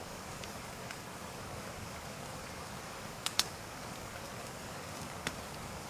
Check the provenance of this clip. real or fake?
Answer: fake